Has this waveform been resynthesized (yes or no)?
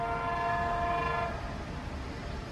no